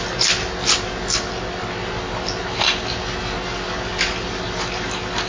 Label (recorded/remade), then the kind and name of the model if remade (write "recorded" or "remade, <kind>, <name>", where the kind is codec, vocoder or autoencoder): recorded